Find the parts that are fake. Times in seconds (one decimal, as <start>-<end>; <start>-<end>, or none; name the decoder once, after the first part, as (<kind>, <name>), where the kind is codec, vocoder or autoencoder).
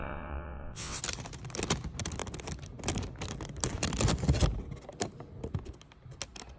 0.0-1.0 (vocoder, WaveNeXt)